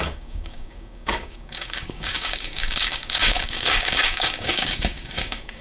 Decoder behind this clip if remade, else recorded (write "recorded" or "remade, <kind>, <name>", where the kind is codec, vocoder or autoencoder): remade, codec, DAC